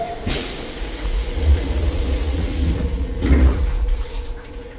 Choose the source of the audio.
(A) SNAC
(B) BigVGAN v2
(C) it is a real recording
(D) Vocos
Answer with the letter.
D